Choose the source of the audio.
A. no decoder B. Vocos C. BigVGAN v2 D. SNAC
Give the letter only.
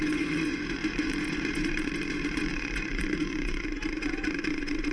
B